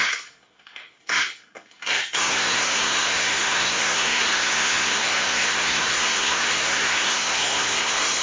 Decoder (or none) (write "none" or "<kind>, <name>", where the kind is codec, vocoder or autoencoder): codec, SNAC